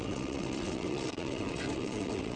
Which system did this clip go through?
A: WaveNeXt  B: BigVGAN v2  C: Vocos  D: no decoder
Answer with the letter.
A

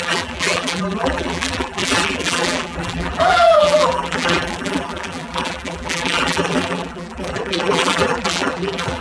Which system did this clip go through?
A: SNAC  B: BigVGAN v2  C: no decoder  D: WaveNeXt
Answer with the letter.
B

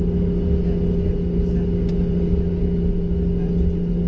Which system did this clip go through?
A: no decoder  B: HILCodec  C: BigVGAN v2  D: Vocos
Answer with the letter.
A